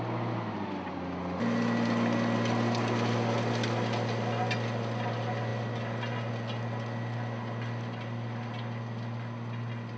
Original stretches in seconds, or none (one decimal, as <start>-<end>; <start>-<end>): 0.0-10.0